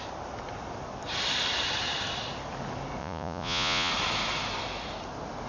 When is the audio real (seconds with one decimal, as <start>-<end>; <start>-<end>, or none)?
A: 0.0-3.0; 3.9-5.5